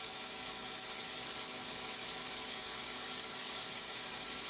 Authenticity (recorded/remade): remade